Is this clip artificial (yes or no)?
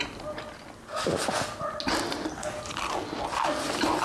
no